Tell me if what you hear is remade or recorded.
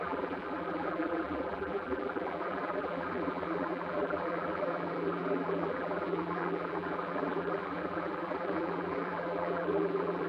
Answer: remade